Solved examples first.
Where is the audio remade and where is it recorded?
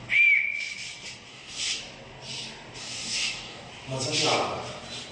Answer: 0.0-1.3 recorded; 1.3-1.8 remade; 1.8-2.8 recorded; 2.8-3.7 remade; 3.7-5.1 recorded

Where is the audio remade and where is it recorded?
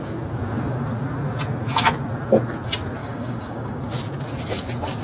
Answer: 0.0-3.0 recorded; 3.0-3.8 remade; 3.8-5.0 recorded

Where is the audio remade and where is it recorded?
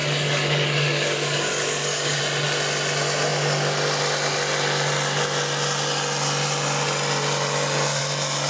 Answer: 0.0-2.2 remade; 2.2-8.5 recorded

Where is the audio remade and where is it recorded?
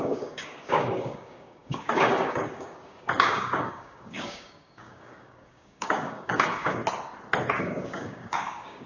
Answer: 0.0-6.8 remade; 6.8-7.6 recorded; 7.6-8.9 remade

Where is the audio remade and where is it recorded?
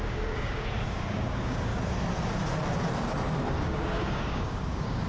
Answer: 0.0-1.7 remade; 1.7-3.6 recorded; 3.6-5.1 remade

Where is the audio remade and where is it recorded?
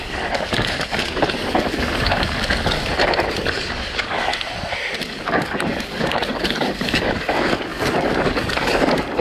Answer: 0.0-2.9 remade; 2.9-3.4 recorded; 3.4-4.3 remade; 4.3-5.0 recorded; 5.0-9.2 remade